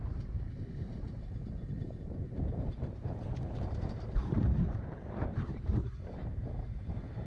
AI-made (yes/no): yes